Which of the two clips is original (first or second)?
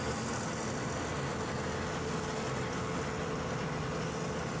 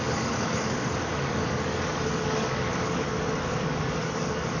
first